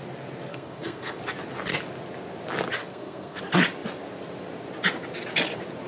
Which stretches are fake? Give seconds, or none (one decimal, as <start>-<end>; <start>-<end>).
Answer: 0.5-1.2; 2.8-3.4